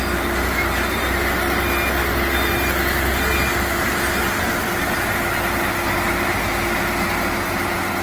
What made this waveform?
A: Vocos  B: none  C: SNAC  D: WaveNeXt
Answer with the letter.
B